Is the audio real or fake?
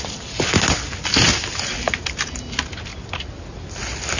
real